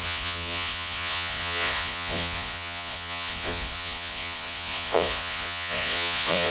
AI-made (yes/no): yes